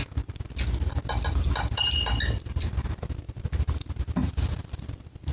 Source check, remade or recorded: recorded